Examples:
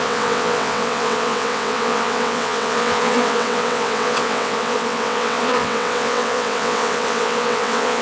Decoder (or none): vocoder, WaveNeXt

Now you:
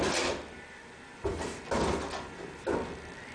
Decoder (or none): none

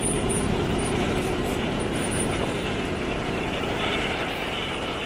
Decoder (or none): vocoder, BigVGAN v2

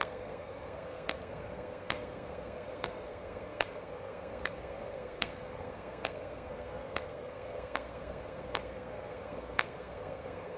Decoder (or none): codec, SNAC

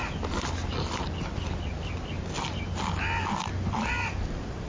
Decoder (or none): none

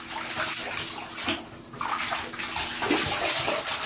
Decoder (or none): none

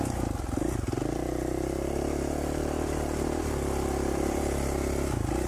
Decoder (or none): none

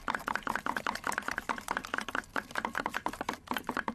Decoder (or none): none